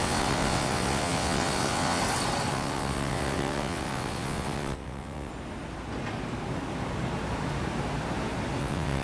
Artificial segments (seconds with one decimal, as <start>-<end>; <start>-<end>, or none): 0.0-2.0; 2.5-5.3; 8.6-9.0